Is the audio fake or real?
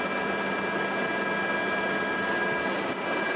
real